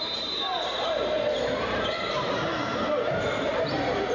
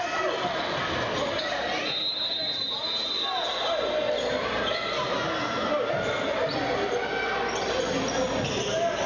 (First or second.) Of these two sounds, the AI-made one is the first